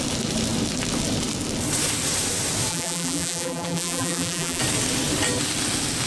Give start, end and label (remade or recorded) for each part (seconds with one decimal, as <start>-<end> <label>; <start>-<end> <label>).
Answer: 0.0-2.7 recorded; 2.7-4.6 remade; 4.6-6.1 recorded